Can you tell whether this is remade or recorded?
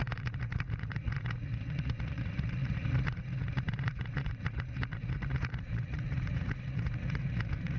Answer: remade